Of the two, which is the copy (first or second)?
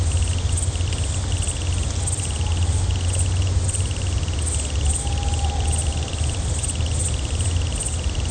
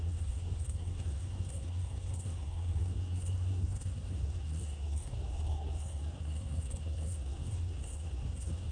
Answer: second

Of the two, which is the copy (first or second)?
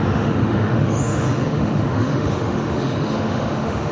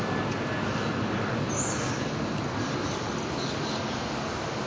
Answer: first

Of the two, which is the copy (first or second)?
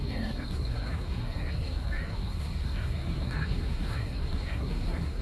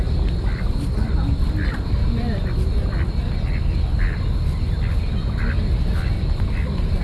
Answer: first